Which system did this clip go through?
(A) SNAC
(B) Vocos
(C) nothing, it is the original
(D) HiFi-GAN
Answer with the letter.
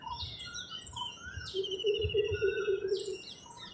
B